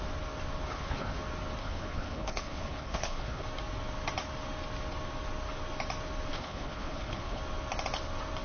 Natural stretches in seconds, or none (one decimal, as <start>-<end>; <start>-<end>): 0.0-0.7; 1.2-1.6; 3.4-6.3; 7.4-8.4